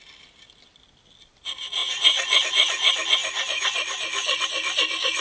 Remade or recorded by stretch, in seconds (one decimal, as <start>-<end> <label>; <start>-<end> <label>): 0.0-5.2 recorded